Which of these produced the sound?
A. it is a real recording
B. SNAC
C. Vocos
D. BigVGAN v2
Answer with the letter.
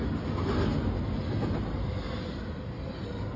A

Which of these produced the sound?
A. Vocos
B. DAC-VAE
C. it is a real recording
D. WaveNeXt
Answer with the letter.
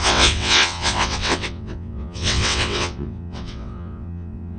D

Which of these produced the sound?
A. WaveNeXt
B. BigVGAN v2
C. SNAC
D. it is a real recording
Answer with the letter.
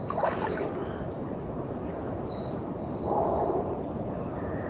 B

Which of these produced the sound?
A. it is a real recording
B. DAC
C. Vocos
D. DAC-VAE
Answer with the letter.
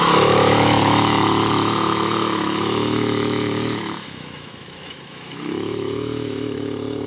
D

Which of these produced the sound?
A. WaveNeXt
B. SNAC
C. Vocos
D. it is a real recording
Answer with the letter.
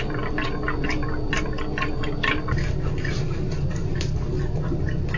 D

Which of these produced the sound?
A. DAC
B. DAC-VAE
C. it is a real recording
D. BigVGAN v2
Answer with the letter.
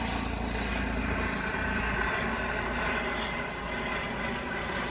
C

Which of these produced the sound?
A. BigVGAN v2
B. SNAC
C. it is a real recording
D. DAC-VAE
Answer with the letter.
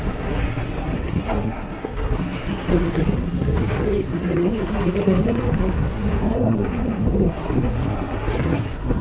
B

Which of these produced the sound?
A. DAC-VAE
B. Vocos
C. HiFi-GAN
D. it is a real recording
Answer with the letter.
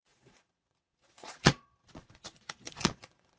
B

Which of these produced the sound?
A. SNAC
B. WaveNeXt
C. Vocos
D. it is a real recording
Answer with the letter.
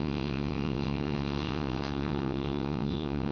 B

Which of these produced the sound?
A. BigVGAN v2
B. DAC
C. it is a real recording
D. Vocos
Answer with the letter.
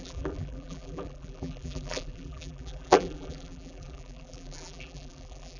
A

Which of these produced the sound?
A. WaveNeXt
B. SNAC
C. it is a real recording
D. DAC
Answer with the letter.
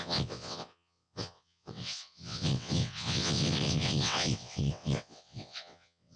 A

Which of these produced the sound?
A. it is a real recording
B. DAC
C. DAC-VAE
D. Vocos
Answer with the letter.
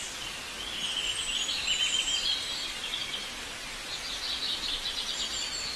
A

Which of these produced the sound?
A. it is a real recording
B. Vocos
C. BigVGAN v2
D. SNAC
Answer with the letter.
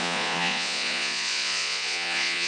B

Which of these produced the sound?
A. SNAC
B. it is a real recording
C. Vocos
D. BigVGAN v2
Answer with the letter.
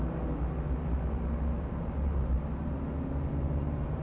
B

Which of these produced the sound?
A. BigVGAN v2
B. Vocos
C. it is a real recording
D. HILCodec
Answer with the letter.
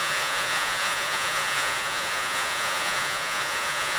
B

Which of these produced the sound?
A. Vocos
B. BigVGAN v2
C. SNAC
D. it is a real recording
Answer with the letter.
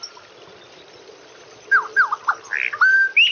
D